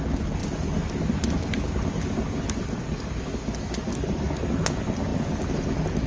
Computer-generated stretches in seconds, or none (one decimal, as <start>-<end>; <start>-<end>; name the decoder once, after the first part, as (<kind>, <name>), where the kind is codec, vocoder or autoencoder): none